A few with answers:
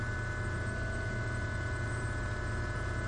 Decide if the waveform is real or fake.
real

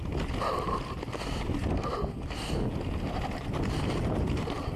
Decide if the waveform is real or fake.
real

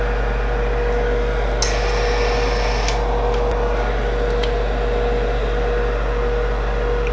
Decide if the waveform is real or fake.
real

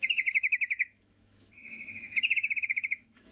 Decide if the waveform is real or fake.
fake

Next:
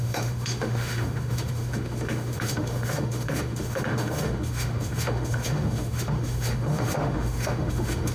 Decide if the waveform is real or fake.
fake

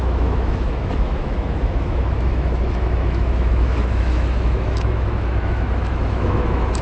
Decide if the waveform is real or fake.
fake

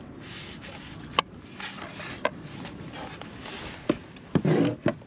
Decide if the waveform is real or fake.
real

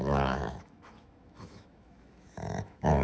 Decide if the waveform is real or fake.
fake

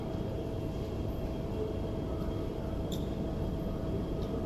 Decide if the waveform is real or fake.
real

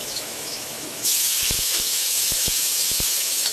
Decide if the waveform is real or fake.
fake